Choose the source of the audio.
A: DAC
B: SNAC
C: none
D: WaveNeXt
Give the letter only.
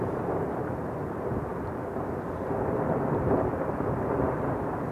C